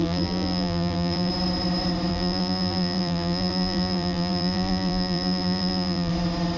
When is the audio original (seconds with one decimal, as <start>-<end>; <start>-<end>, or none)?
1.3-2.1; 6.1-6.6